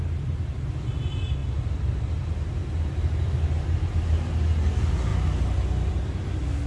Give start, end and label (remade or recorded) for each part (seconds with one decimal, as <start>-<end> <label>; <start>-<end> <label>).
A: 0.0-6.7 recorded